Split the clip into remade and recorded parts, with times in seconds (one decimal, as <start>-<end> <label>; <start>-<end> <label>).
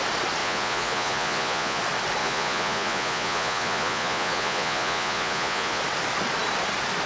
0.0-0.4 recorded; 0.4-1.8 remade; 1.8-2.2 recorded; 2.2-5.8 remade; 5.8-7.1 recorded